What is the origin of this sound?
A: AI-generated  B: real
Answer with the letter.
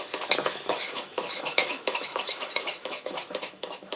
A